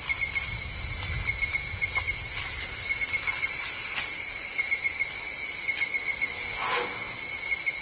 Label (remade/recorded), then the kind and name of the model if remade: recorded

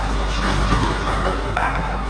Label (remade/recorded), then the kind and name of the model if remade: remade, codec, SNAC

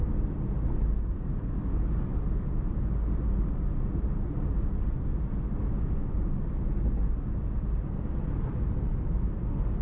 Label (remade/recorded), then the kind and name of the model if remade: recorded